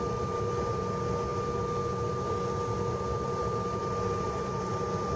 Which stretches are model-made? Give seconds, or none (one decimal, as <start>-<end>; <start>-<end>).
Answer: none